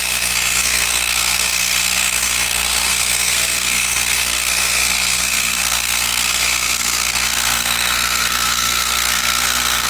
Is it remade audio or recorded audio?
remade